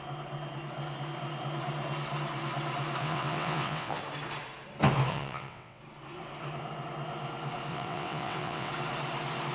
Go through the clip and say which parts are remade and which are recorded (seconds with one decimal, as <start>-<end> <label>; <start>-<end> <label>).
0.0-3.0 recorded; 3.0-4.0 remade; 4.0-5.1 recorded; 5.1-5.8 remade; 5.8-7.7 recorded; 7.7-8.7 remade; 8.7-9.5 recorded